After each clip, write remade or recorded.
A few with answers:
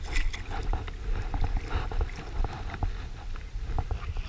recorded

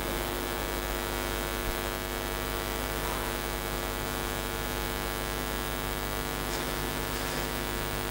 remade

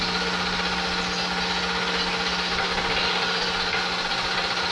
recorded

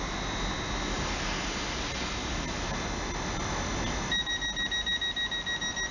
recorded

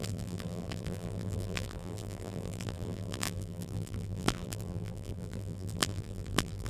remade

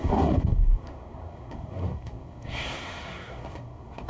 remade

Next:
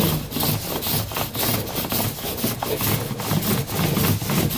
recorded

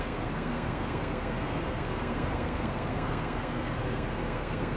remade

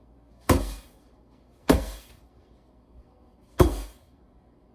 remade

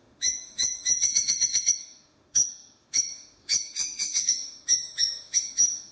remade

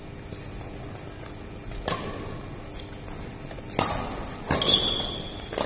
recorded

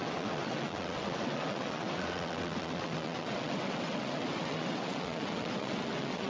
remade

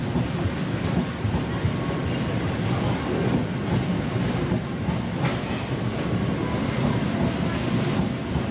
recorded